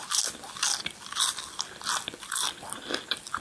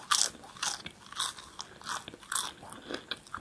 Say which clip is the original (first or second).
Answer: second